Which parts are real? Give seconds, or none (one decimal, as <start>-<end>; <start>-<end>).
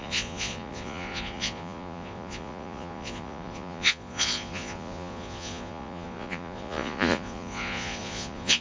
none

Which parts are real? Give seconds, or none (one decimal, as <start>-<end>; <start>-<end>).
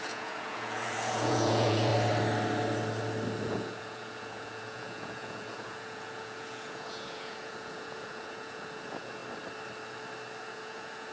1.9-3.4; 9.2-10.4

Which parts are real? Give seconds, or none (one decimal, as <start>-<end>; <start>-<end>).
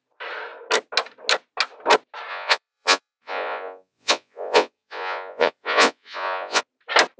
0.0-2.3; 6.6-7.2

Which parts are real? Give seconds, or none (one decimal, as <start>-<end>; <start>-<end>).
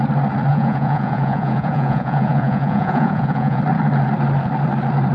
0.0-0.5; 3.6-5.1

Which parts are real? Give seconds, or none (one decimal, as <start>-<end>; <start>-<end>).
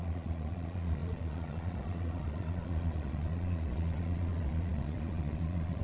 none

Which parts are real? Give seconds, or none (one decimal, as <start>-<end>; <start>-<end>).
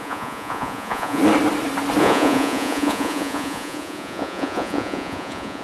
1.2-2.0